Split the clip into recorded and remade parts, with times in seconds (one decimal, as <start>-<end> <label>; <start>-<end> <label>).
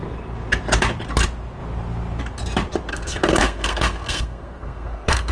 0.0-2.9 recorded; 2.9-5.3 remade